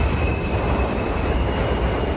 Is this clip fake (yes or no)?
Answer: yes